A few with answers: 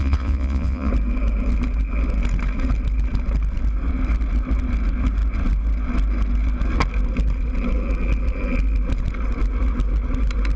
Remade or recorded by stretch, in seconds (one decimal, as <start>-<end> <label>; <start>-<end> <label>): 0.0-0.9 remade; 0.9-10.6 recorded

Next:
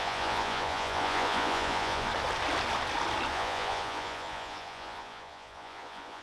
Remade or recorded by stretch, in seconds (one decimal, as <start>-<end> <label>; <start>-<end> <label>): 0.0-2.1 remade; 2.1-3.3 recorded; 3.3-6.2 remade

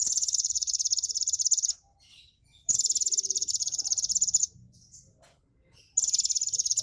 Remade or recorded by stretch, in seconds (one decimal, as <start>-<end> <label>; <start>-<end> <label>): 0.0-0.8 remade; 0.8-2.1 recorded; 2.1-2.7 remade; 2.7-4.4 recorded; 4.4-5.5 remade; 5.5-6.8 recorded

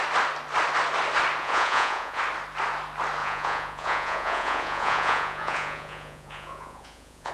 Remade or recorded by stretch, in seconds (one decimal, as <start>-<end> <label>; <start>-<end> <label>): 0.0-1.4 recorded; 1.4-2.2 remade; 2.2-3.2 recorded; 3.2-7.3 remade

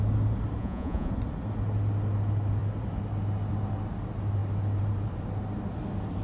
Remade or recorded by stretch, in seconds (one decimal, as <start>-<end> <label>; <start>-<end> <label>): 0.0-0.6 recorded; 0.6-1.1 remade; 1.1-6.2 recorded

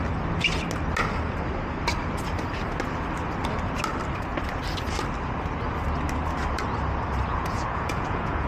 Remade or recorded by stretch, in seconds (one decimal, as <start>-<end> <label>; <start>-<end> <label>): 0.0-7.3 recorded; 7.3-8.5 remade

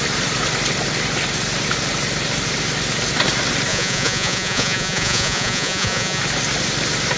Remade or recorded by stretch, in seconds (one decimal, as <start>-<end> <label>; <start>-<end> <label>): 0.0-3.7 recorded; 3.7-6.2 remade; 6.2-7.2 recorded